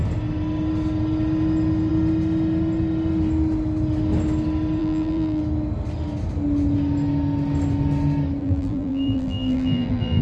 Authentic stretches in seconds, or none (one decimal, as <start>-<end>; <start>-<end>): 0.0-4.8; 5.4-8.4